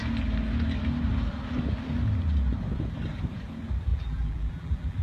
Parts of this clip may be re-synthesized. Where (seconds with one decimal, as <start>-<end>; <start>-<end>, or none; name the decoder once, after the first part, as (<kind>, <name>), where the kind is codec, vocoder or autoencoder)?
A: 3.9-5.0 (vocoder, BigVGAN v2)